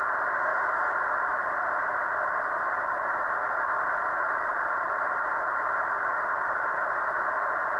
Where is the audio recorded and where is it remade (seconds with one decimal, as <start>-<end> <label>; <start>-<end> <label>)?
0.0-7.8 recorded